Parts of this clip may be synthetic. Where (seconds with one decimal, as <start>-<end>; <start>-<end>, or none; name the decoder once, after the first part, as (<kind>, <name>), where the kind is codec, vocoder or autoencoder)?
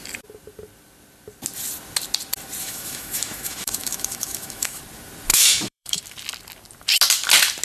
2.6-4.8 (autoencoder, DAC-VAE); 5.3-6.0